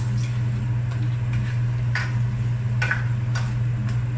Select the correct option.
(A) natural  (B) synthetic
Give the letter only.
A